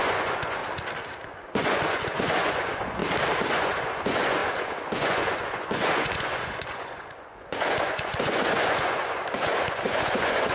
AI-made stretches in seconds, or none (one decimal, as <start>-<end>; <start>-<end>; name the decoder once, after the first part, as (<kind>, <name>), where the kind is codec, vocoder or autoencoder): 0.0-0.6 (vocoder, Vocos); 1.1-3.0; 3.5-10.5